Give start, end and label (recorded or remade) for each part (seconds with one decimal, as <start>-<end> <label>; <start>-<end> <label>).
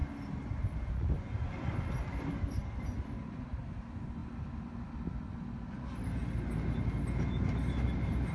0.0-8.3 recorded